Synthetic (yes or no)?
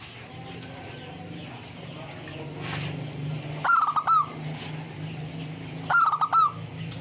no